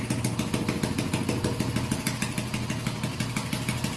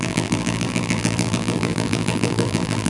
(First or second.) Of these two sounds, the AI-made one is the second